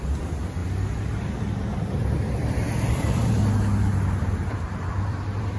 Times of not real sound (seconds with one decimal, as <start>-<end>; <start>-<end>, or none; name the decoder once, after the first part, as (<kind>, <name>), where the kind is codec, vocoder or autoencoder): 0.0-0.6 (vocoder, BigVGAN v2); 1.2-3.4; 4.5-5.6